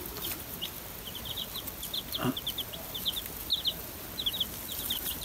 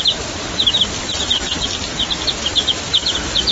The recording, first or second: first